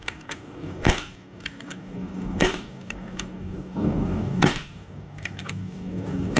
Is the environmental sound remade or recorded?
remade